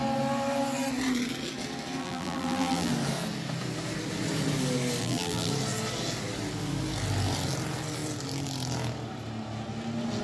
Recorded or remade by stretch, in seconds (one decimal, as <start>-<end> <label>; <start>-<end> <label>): 0.0-2.0 recorded; 2.0-2.9 remade; 2.9-5.0 recorded; 5.0-5.5 remade; 5.5-10.2 recorded